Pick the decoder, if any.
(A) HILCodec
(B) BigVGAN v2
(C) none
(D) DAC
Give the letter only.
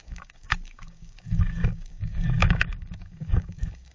D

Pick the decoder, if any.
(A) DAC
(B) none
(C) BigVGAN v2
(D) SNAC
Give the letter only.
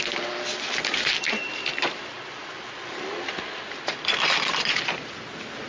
B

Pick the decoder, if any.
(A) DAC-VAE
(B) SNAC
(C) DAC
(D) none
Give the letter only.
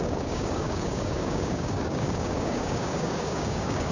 C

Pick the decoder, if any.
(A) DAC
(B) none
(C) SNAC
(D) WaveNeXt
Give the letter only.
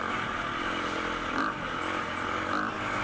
B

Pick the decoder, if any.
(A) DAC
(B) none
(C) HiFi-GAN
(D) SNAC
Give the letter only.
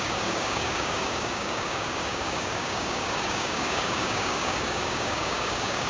A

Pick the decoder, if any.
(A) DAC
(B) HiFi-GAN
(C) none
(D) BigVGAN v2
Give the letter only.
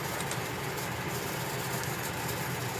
C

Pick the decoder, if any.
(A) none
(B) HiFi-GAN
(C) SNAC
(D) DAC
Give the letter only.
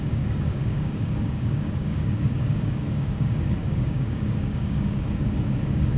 D